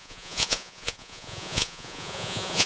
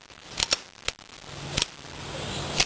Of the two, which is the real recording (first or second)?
second